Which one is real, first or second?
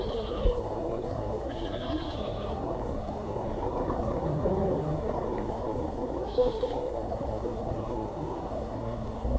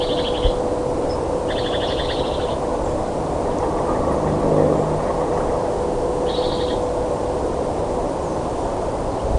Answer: second